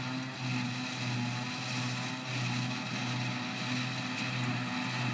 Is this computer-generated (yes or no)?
no